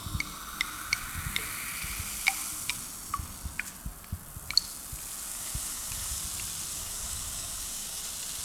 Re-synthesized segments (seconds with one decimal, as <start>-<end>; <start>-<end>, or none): 5.3-6.2; 6.7-8.0